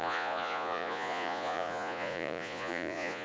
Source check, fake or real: fake